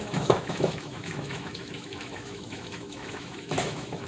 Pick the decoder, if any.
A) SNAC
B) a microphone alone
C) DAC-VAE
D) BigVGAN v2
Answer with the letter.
C